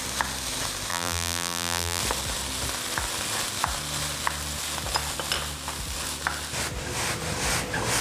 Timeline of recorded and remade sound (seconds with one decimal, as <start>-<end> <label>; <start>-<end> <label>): 0.0-0.9 recorded; 0.9-2.0 remade; 2.0-8.0 recorded